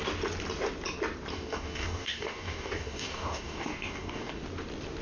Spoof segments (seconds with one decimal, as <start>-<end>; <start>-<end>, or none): 1.3-4.3